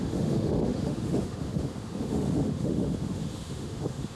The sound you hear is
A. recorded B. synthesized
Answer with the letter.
B